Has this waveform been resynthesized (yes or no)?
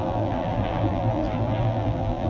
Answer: yes